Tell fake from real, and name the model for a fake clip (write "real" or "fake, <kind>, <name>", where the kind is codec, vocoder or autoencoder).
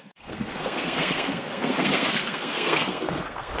fake, codec, SNAC